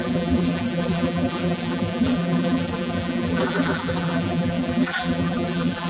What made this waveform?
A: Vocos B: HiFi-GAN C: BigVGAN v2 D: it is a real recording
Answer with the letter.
C